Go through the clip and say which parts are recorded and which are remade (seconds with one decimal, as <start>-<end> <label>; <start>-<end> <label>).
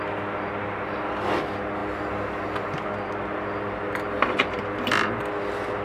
0.0-1.8 remade; 1.8-2.6 recorded; 2.6-5.8 remade